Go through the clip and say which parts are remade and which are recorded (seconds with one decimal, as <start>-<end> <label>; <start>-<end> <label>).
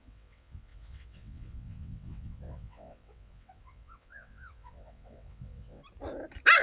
0.0-5.8 remade; 5.8-6.6 recorded